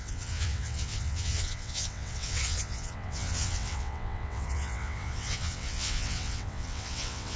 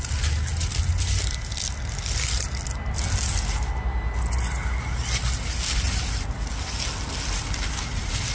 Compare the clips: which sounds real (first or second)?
second